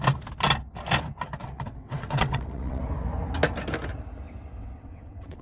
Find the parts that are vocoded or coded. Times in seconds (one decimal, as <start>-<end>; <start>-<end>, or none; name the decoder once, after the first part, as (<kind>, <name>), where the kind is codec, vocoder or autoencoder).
1.4-2.8 (vocoder, WaveNeXt); 4.6-5.4